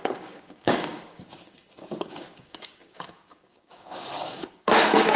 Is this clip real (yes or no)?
no